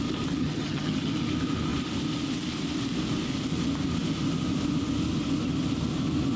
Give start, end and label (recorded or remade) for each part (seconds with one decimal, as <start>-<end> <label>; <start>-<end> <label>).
0.0-0.4 recorded; 0.4-1.1 remade; 1.1-6.4 recorded